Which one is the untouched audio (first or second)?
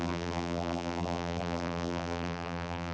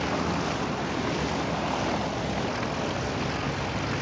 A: second